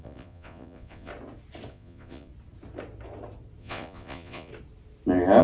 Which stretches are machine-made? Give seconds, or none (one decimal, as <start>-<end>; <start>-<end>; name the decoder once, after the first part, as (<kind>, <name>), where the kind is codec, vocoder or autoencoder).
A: 0.0-1.1 (vocoder, Vocos); 1.7-2.3; 3.6-4.5